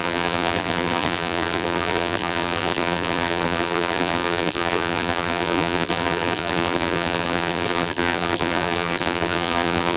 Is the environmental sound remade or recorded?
remade